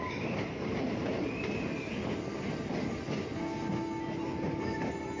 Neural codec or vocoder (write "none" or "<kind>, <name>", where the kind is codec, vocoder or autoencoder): none